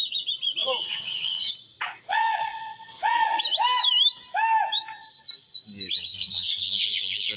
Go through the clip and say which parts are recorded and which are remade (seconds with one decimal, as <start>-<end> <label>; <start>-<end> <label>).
0.0-0.6 recorded; 0.6-1.5 remade; 1.5-2.1 recorded; 2.1-3.4 remade; 3.4-6.2 recorded; 6.2-7.4 remade